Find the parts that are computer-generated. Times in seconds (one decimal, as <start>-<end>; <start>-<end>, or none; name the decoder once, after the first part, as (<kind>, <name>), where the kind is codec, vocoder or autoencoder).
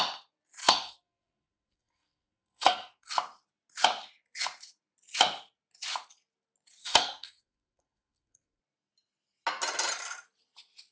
0.6-3.1 (codec, SNAC); 6.8-8.6